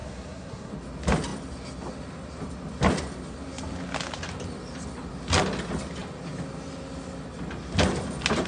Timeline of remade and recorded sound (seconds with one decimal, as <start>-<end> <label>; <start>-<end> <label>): 0.0-0.7 remade; 0.7-8.5 recorded